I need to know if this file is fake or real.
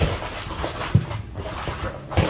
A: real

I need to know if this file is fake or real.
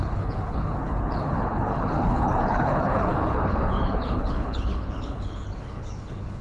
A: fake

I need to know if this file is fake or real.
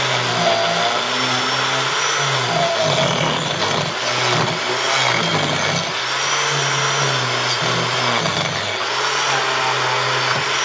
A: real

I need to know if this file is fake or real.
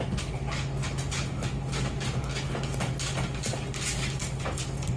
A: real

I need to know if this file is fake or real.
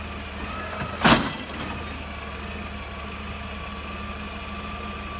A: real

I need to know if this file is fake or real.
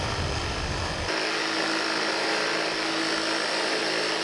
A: real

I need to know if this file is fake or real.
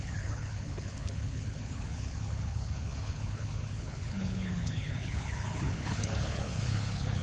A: fake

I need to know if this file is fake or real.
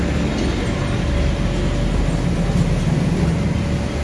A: real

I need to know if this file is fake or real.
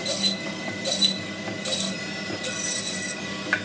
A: real